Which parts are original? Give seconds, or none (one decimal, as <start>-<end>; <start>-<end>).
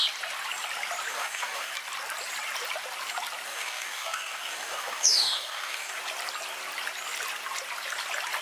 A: 0.0-1.1; 1.7-3.5; 6.0-8.4